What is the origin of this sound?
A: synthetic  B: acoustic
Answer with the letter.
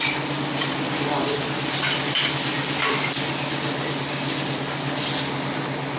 B